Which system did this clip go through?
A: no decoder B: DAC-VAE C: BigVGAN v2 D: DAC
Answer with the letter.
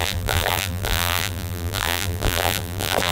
C